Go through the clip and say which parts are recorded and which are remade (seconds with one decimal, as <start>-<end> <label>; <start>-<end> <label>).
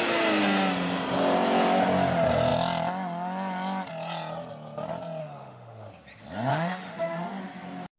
0.0-5.2 recorded; 5.2-5.9 remade; 5.9-6.5 recorded; 6.5-7.4 remade; 7.4-8.0 recorded